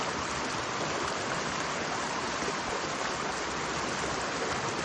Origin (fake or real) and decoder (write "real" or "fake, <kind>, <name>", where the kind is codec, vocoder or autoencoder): real